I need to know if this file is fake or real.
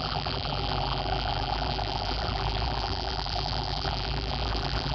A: fake